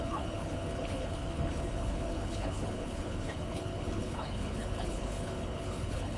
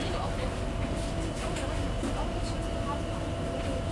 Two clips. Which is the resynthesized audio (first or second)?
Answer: first